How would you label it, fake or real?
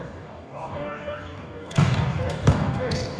fake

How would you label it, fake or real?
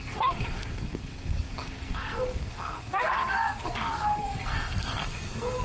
fake